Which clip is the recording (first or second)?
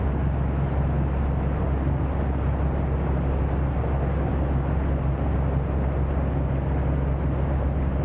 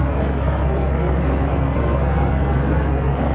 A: first